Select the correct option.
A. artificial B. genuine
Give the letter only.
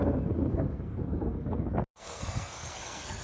A